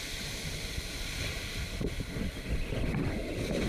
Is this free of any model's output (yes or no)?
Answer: yes